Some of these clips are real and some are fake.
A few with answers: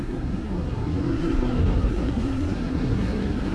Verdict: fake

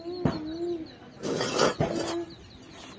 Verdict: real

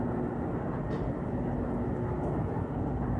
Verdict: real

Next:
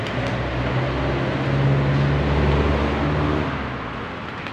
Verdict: real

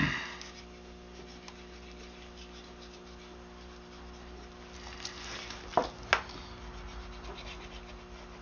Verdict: real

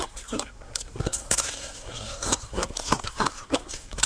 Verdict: fake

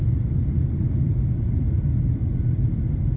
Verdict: real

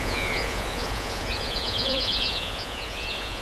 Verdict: fake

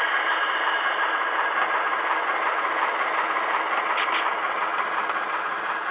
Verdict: real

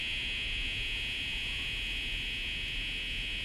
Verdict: real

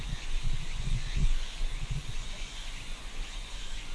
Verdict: fake